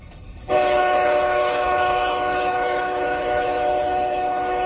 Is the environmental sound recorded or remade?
remade